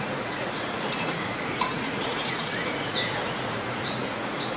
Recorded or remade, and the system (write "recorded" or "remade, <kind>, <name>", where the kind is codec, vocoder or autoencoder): remade, vocoder, Vocos